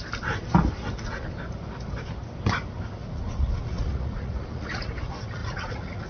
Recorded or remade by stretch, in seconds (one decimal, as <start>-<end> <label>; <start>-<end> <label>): 0.0-3.0 recorded; 3.0-4.9 remade; 4.9-5.4 recorded; 5.4-6.1 remade